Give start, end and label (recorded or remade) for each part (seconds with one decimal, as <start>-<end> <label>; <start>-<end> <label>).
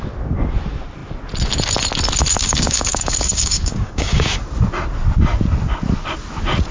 0.0-2.4 recorded; 2.4-4.3 remade; 4.3-6.7 recorded